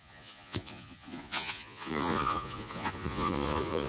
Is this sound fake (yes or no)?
yes